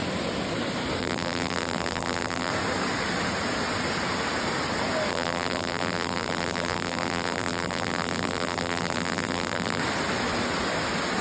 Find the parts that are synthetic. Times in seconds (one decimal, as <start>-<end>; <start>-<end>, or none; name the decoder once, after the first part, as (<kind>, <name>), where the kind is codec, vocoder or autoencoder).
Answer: 1.0-2.5 (vocoder, BigVGAN v2); 5.1-9.8